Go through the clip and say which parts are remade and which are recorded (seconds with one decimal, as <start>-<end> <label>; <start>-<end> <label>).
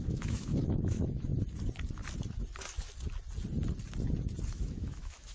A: 0.0-1.3 remade; 1.3-4.5 recorded; 4.5-5.3 remade